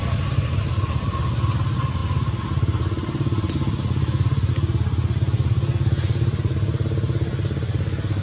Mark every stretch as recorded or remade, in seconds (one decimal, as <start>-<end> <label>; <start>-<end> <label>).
0.0-8.2 recorded